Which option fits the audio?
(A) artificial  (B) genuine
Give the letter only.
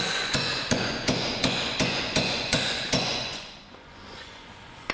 A